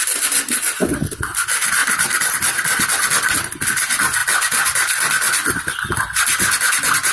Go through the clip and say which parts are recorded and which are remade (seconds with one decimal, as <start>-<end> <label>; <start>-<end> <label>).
0.0-7.1 recorded